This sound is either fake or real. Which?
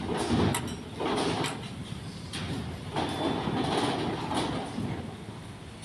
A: real